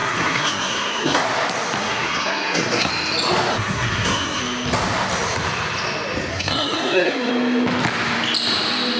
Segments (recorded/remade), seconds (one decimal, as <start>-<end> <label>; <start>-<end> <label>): 0.0-1.2 remade; 1.2-1.8 recorded; 1.8-2.9 remade; 2.9-3.5 recorded; 3.5-4.4 remade; 4.4-6.3 recorded; 6.3-7.3 remade; 7.3-9.0 recorded